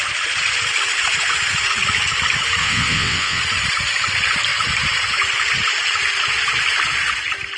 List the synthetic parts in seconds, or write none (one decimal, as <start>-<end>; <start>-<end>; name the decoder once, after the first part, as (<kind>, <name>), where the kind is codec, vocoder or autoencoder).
2.6-3.4 (vocoder, WaveNeXt)